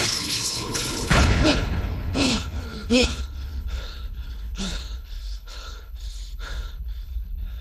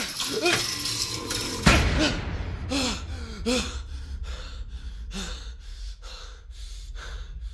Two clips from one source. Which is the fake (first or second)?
first